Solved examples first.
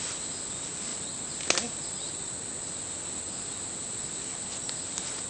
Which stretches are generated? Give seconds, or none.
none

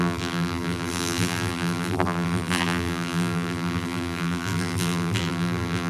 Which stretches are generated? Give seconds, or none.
0.0-5.9 (vocoder, BigVGAN v2)

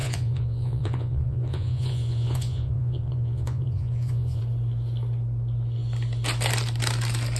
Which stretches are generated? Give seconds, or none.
0.0-4.4 (vocoder, Vocos)

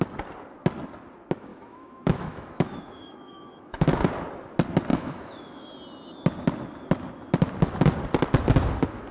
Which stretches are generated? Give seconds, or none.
1.5-4.0 (autoencoder, DAC-VAE); 4.9-5.7

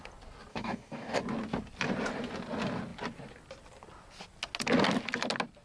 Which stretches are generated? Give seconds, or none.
0.5-1.2 (codec, DAC)

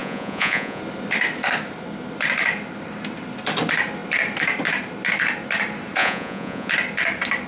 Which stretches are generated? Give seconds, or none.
0.0-0.8 (vocoder, Vocos); 6.0-6.7